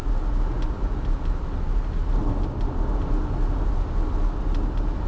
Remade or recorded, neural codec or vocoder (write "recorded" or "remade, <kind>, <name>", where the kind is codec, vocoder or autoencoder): recorded